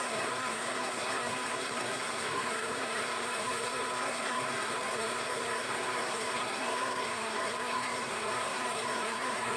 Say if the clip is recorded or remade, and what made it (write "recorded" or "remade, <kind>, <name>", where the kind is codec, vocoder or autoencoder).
remade, codec, SNAC